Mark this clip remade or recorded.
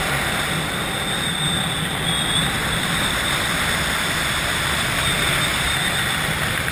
recorded